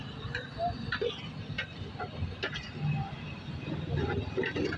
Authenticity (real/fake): real